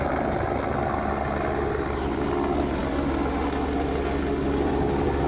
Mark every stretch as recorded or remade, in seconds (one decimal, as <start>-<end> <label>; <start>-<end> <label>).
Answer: 0.0-5.3 recorded